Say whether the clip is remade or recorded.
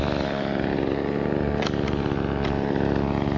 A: recorded